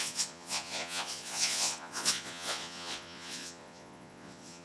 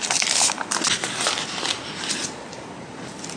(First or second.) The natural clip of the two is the second